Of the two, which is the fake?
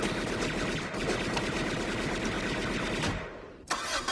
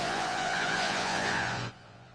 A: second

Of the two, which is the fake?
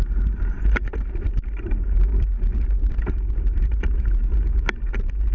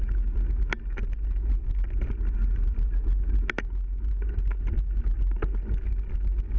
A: first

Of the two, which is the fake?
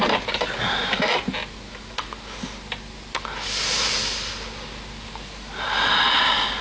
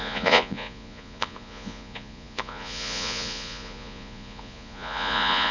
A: second